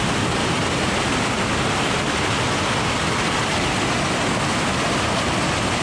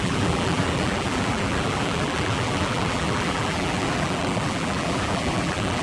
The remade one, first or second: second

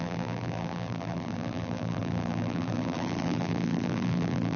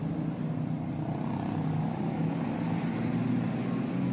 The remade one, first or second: first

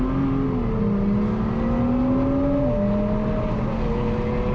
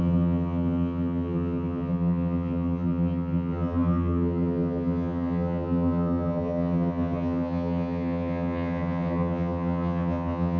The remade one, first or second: second